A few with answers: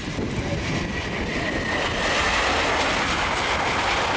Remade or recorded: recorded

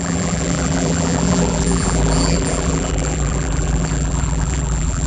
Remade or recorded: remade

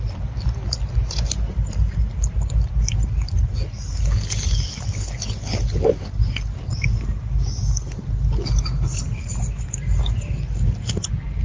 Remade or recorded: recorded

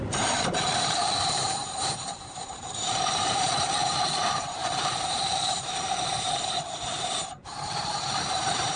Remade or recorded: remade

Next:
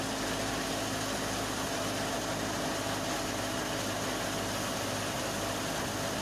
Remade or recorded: recorded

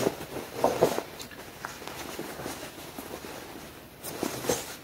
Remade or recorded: recorded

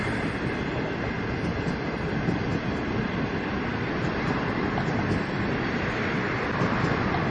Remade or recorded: recorded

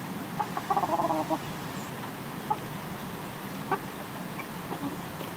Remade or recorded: recorded